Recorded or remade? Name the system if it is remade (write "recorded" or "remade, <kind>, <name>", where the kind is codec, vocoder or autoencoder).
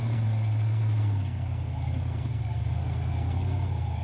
remade, codec, SNAC